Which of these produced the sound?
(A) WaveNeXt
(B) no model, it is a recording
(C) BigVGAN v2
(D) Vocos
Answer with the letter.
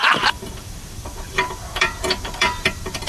C